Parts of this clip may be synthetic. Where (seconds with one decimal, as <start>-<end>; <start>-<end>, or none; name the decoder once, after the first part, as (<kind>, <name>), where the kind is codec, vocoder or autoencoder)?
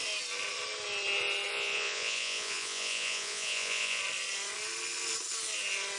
1.5-4.0 (vocoder, Vocos)